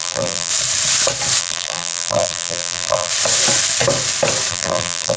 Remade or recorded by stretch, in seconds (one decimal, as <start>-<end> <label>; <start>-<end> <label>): 0.0-0.5 remade; 0.5-1.4 recorded; 1.4-3.1 remade; 3.1-4.5 recorded; 4.5-5.2 remade